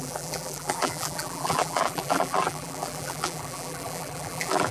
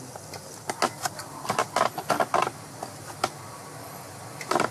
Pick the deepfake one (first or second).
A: first